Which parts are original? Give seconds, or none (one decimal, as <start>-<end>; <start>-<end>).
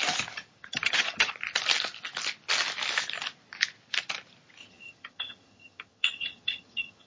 0.0-0.6; 1.3-4.6